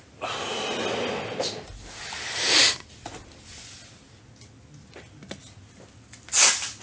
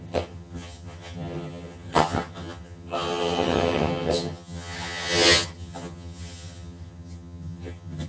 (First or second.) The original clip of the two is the first